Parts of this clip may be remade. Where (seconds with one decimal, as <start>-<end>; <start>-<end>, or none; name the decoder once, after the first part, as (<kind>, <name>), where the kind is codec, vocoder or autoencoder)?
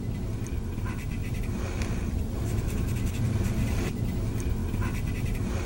0.0-1.2 (vocoder, BigVGAN v2); 3.2-5.7